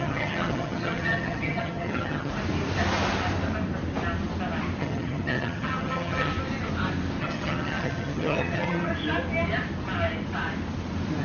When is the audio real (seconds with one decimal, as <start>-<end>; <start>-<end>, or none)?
2.3-4.8; 6.3-7.2; 8.9-11.2